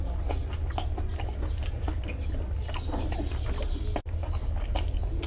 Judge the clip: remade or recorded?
recorded